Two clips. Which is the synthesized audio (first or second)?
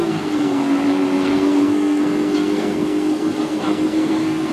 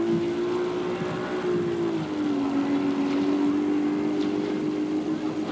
first